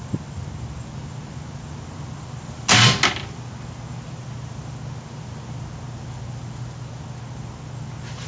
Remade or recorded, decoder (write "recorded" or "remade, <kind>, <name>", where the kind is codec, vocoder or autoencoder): recorded